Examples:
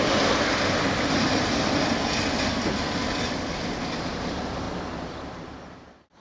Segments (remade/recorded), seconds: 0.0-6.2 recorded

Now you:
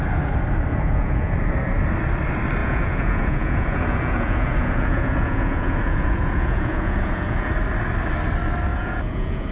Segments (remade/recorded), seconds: 0.0-0.7 recorded; 0.7-1.3 remade; 1.3-2.6 recorded; 2.6-7.5 remade; 7.5-8.7 recorded; 8.7-9.5 remade